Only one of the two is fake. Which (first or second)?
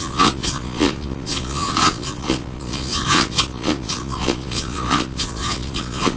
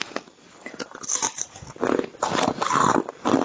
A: first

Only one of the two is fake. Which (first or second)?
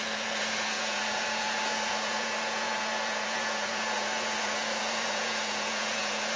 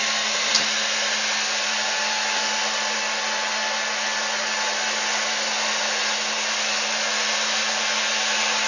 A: first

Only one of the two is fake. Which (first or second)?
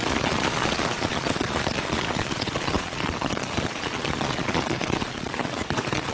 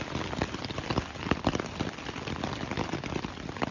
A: first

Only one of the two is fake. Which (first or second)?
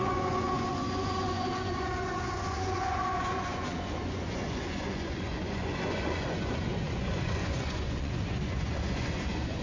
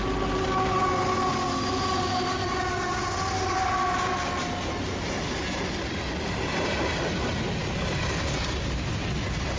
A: first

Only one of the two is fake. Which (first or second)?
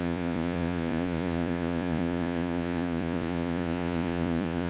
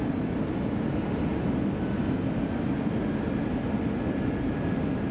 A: first